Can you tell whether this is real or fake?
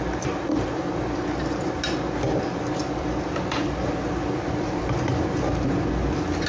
real